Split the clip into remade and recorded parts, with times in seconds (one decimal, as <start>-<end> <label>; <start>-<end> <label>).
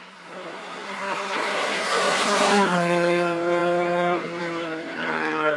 0.0-5.6 remade